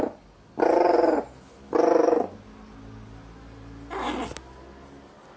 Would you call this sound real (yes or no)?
yes